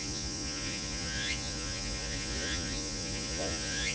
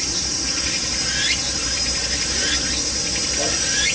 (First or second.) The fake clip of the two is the first